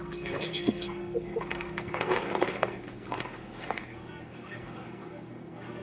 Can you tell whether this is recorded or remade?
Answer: remade